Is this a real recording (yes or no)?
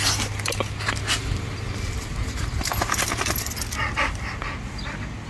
yes